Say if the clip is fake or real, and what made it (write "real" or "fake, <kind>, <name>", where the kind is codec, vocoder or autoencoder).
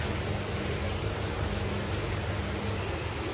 real